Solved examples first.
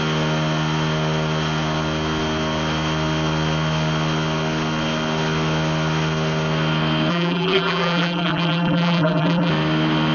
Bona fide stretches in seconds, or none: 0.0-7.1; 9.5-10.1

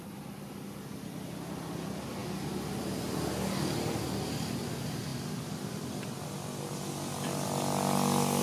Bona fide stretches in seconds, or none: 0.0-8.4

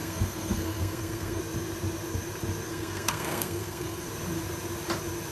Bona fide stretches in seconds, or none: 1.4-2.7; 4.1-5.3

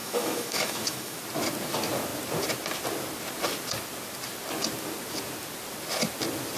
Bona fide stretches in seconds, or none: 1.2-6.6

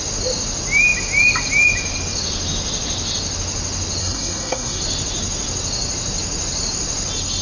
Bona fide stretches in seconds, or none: 0.0-4.0; 4.8-7.4

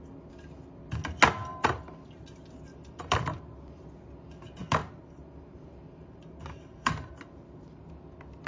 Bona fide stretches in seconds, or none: 0.0-1.5; 2.1-2.7; 3.4-4.8; 7.9-8.5